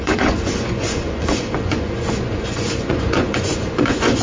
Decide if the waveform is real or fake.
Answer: fake